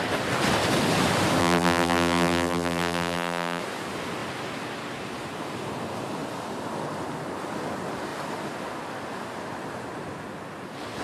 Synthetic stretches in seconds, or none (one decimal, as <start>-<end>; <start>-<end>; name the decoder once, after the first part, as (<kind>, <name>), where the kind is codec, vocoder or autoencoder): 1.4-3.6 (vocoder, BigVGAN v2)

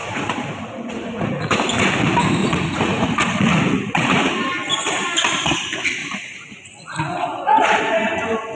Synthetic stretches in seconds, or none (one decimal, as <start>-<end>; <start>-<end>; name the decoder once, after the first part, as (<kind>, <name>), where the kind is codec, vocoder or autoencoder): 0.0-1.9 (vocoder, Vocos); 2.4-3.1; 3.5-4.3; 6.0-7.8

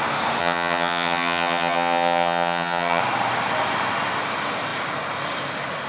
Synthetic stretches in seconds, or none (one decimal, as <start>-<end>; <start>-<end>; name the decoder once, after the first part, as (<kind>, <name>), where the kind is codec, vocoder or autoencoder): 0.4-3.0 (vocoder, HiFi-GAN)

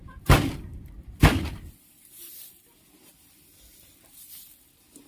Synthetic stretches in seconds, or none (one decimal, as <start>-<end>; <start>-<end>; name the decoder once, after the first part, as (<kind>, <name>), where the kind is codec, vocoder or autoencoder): 0.0-5.1 (vocoder, BigVGAN v2)

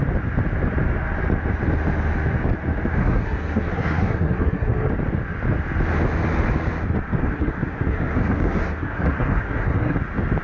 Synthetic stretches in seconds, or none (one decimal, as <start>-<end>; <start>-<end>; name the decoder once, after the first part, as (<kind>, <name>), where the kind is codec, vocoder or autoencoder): 3.0-4.9 (codec, SNAC); 7.2-10.0

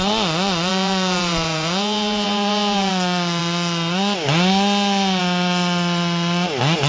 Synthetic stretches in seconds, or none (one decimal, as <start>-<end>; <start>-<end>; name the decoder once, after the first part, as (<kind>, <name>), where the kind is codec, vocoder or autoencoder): 0.7-2.9 (vocoder, Vocos)

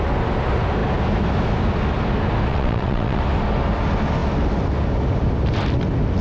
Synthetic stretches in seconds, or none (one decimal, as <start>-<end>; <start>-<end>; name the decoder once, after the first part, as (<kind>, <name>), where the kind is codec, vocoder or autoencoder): 2.5-3.2 (vocoder, WaveNeXt)

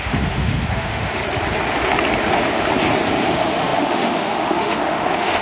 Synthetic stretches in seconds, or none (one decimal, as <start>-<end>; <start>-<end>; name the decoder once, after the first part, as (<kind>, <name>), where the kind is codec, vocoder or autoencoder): 0.0-1.2 (autoencoder, DAC-VAE); 3.2-5.4